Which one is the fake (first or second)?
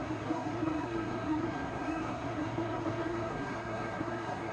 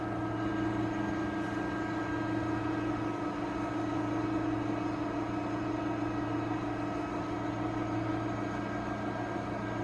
first